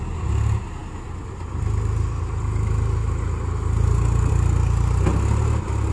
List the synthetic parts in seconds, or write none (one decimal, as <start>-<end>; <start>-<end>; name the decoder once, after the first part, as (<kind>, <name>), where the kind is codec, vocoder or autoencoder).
none